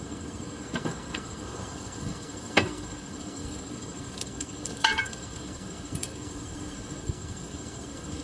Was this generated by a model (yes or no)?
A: yes